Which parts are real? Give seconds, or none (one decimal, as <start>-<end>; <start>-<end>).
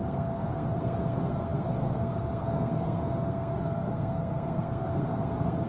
none